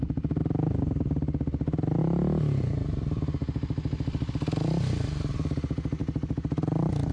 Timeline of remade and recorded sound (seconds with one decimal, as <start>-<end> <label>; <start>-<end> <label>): 0.0-7.1 recorded